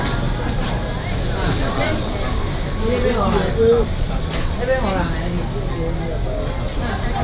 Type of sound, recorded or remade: recorded